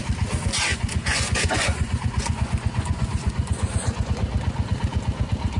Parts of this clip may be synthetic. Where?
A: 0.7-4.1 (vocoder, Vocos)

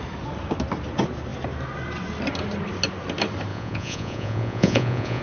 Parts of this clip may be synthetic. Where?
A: 3.5-5.2 (vocoder, Vocos)

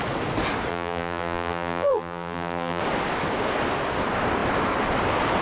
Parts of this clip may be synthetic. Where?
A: 0.7-2.8 (vocoder, BigVGAN v2)

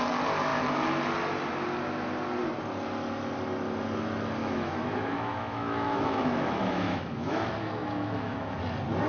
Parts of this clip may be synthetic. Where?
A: 4.4-8.6 (autoencoder, DAC-VAE)